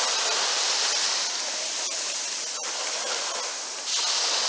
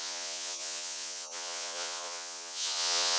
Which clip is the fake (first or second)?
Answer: second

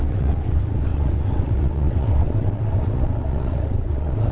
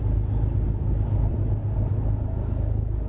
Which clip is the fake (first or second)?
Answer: first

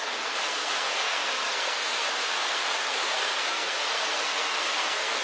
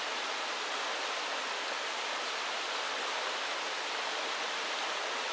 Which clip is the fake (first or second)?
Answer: first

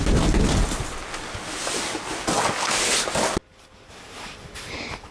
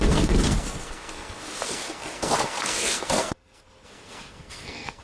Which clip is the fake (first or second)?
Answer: second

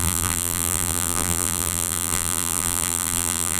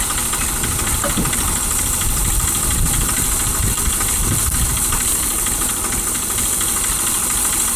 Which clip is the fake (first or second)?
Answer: first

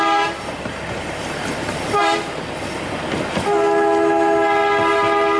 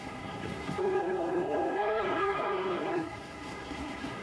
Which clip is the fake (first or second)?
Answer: second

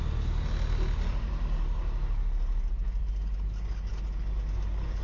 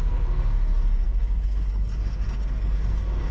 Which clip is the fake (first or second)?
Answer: second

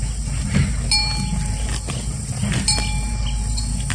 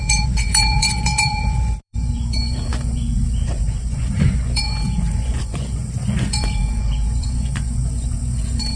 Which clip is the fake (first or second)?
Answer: second